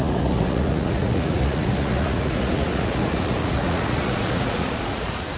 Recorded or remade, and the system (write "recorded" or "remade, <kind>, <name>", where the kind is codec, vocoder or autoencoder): remade, vocoder, Vocos